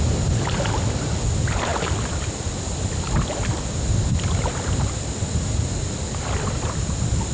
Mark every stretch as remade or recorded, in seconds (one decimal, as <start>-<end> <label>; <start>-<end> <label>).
0.0-7.3 recorded